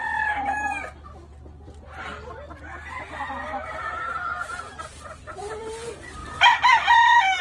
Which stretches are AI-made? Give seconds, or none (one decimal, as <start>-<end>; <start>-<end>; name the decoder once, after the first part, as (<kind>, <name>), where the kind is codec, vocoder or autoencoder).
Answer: 1.3-5.7 (vocoder, BigVGAN v2)